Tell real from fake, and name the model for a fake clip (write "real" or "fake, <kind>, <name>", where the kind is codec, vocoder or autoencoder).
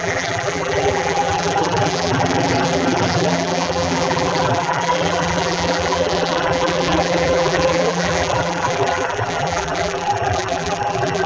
fake, vocoder, BigVGAN v2